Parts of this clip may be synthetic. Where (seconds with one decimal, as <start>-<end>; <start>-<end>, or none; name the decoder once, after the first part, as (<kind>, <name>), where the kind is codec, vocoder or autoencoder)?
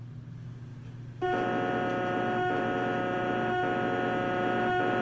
none